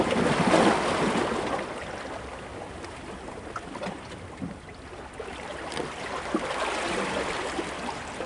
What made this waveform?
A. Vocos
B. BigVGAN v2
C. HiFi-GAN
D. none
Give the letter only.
D